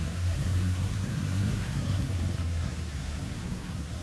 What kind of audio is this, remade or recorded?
remade